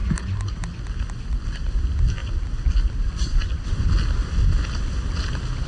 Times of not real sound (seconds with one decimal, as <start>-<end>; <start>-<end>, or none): 0.0-1.8